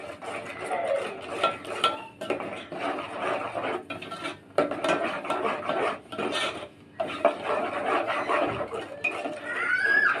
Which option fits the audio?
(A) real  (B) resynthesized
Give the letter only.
A